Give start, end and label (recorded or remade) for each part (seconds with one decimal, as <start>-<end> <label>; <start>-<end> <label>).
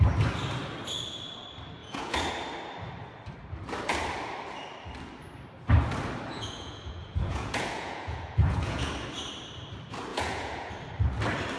0.0-1.8 recorded; 1.8-2.3 remade; 2.3-6.3 recorded; 6.3-8.9 remade; 8.9-10.1 recorded; 10.1-10.7 remade; 10.7-11.6 recorded